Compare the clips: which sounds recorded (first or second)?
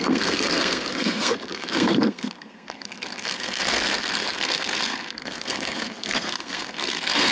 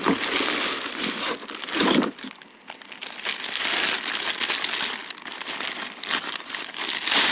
second